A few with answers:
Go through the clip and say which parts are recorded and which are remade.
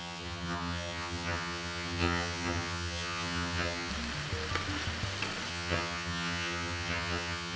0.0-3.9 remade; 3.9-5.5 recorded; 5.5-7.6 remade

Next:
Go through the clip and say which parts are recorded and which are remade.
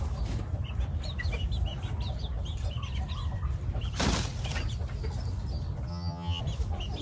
0.0-5.9 recorded; 5.9-6.4 remade; 6.4-7.0 recorded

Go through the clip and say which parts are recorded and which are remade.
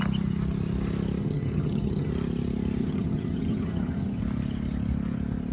0.0-1.2 recorded; 1.2-2.1 remade; 2.1-2.8 recorded; 2.8-4.2 remade; 4.2-5.5 recorded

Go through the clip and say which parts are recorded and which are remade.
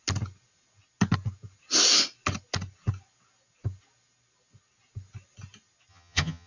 0.0-5.9 recorded; 5.9-6.5 remade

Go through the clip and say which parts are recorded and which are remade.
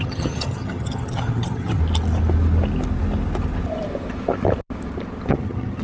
0.0-1.8 remade; 1.8-5.3 recorded; 5.3-5.8 remade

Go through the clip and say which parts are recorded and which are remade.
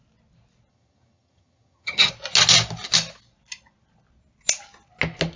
0.0-0.7 recorded; 0.7-2.1 remade; 2.1-5.4 recorded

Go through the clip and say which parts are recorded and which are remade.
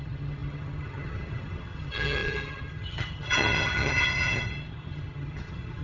0.0-5.8 remade